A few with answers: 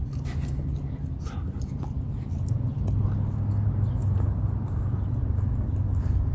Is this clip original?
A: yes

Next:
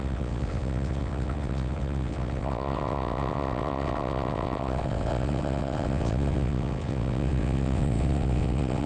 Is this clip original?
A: no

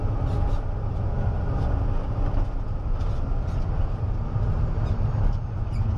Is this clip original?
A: yes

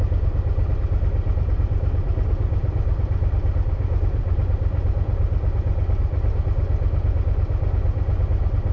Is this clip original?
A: yes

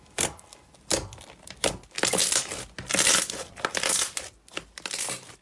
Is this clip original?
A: yes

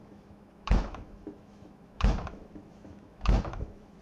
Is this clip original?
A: no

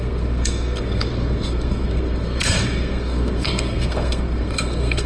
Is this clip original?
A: no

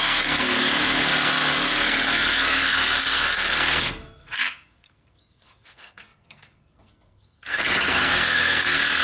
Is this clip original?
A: no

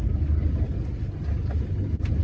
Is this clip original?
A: yes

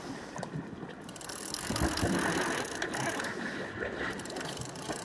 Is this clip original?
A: yes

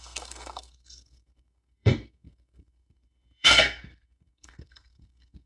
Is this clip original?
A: no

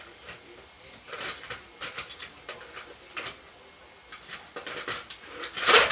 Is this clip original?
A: yes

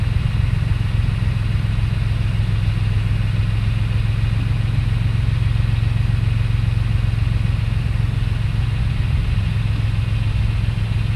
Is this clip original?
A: yes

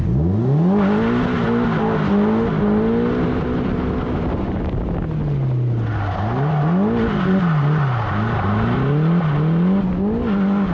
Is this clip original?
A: yes